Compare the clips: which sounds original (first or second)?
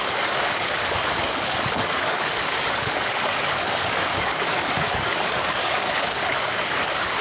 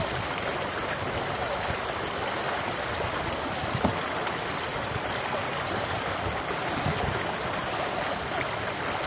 second